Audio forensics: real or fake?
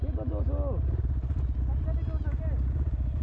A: real